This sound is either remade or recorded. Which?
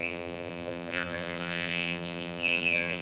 remade